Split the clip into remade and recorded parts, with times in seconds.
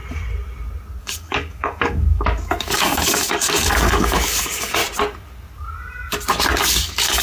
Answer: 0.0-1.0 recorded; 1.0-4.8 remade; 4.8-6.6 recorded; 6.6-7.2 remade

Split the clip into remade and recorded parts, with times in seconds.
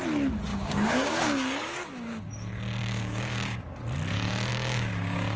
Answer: 0.0-0.5 recorded; 0.5-2.2 remade; 2.2-2.8 recorded; 2.8-3.7 remade; 3.7-4.5 recorded; 4.5-5.4 remade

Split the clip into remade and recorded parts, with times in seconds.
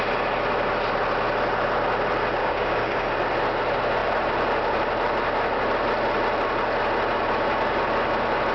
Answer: 0.0-2.4 recorded; 2.4-3.1 remade; 3.1-8.5 recorded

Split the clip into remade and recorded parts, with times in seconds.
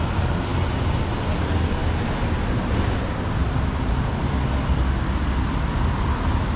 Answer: 0.0-6.6 recorded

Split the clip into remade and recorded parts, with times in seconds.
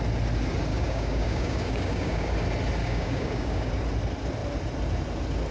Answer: 0.0-0.7 recorded; 0.7-2.3 remade; 2.3-2.8 recorded; 2.8-3.7 remade; 3.7-5.5 recorded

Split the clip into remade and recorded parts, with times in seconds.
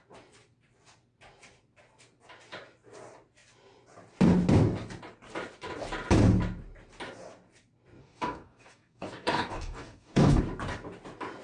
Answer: 0.0-8.0 recorded; 8.0-10.4 remade; 10.4-11.4 recorded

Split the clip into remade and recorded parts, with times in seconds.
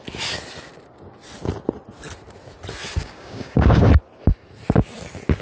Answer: 0.0-3.0 recorded; 3.0-3.8 remade; 3.8-5.4 recorded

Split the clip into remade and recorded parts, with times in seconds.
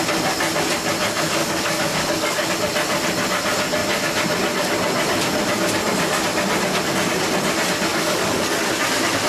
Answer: 0.0-1.4 recorded; 1.4-2.5 remade; 2.5-7.9 recorded; 7.9-8.7 remade; 8.7-9.3 recorded